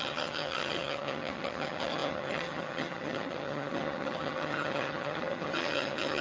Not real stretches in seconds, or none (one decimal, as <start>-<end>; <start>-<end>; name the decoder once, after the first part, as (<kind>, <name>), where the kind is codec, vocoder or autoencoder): 0.0-6.2 (vocoder, HiFi-GAN)